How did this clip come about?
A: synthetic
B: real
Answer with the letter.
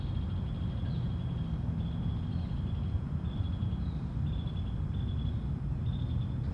B